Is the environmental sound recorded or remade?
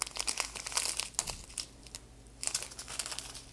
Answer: recorded